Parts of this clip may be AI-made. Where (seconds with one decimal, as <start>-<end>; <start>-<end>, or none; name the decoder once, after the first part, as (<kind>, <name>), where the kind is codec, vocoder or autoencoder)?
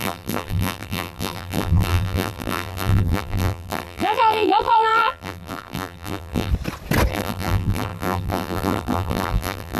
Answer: 0.0-6.5 (vocoder, BigVGAN v2); 7.1-9.8